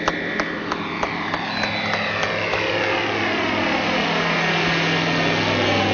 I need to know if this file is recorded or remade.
recorded